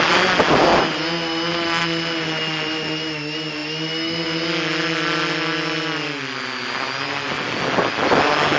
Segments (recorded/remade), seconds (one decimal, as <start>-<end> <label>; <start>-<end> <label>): 0.0-8.6 recorded